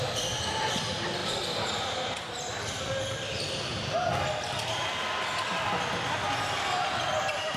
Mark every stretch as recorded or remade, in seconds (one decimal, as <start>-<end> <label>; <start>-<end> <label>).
0.0-7.6 recorded